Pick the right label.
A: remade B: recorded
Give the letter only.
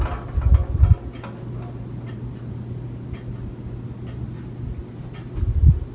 B